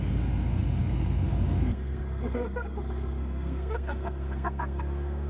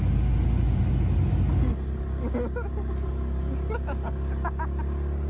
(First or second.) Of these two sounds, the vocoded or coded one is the first